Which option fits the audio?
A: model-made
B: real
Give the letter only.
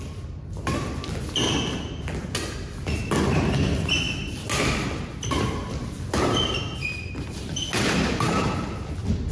B